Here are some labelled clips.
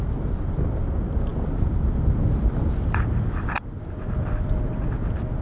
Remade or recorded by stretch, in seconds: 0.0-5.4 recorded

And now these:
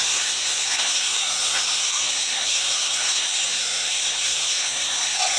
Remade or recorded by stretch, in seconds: 0.0-5.4 remade

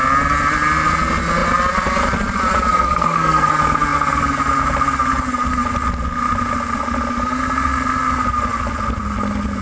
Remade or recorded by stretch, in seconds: 0.0-2.7 recorded; 2.7-3.5 remade; 3.5-9.6 recorded

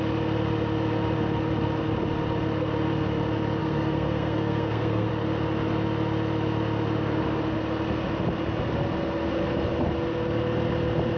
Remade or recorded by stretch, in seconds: 0.0-3.6 recorded; 3.6-5.1 remade; 5.1-11.2 recorded